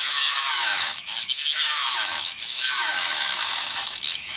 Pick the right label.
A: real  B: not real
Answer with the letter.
B